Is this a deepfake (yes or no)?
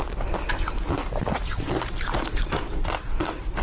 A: yes